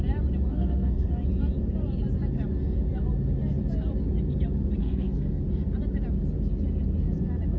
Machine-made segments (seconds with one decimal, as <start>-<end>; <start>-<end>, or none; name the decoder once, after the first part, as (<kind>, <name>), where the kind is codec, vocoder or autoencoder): 0.5-1.1 (codec, SNAC); 4.8-5.4